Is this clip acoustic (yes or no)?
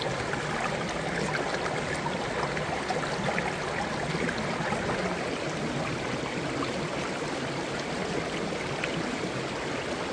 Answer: yes